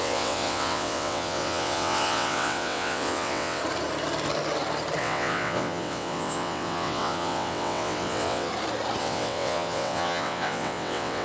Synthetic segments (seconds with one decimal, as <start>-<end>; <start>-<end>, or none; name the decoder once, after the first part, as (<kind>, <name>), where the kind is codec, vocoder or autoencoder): 0.0-3.6 (vocoder, WaveNeXt); 5.0-8.5; 9.0-11.2